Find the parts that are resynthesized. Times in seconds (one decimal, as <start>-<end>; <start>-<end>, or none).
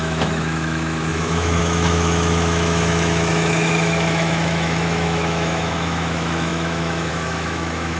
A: 0.0-8.0